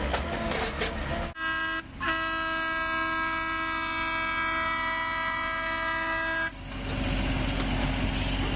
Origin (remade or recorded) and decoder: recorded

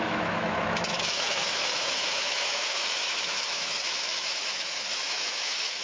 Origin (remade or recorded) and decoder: remade, autoencoder, DAC-VAE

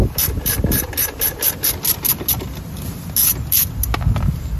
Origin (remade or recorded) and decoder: recorded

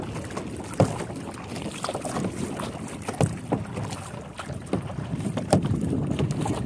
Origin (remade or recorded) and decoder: recorded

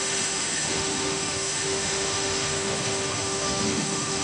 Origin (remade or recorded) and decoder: remade, autoencoder, DAC-VAE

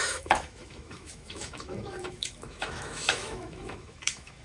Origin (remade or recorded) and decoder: remade, autoencoder, DAC-VAE